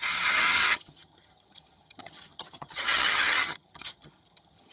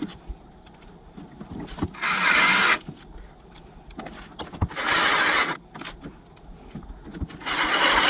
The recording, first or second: second